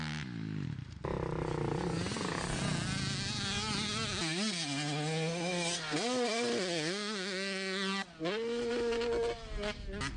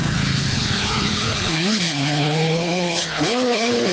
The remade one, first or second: second